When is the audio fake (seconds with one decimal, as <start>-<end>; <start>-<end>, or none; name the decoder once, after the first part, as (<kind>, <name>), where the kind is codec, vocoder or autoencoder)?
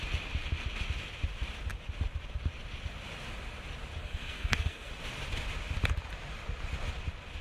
4.0-4.9 (codec, SNAC)